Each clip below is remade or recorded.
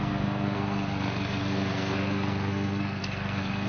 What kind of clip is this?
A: remade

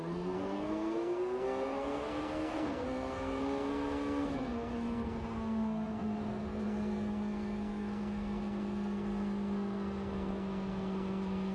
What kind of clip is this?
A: remade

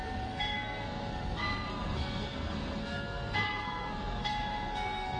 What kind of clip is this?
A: remade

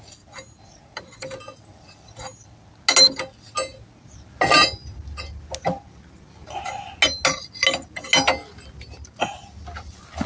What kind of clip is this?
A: recorded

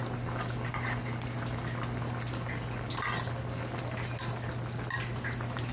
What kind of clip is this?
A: recorded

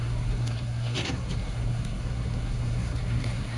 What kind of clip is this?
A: remade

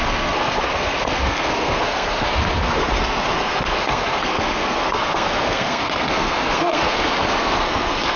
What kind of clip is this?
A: remade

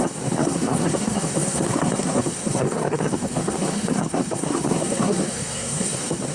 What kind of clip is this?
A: remade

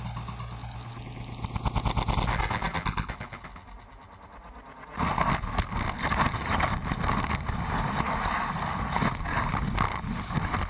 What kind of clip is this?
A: recorded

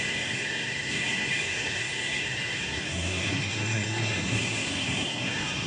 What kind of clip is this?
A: remade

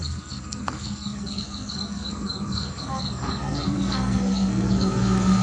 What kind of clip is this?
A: remade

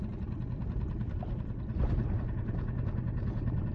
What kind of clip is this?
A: recorded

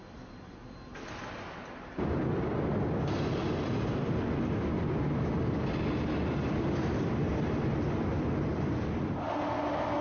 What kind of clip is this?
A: recorded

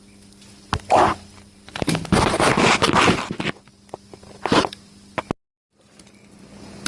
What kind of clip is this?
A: recorded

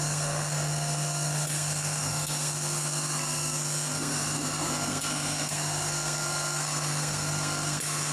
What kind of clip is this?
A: remade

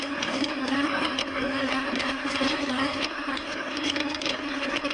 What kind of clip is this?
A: remade